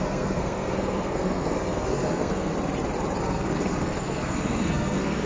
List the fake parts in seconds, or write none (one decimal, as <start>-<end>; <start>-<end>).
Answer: 0.0-2.5; 3.2-5.3